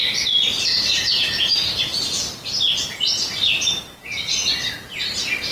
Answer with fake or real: real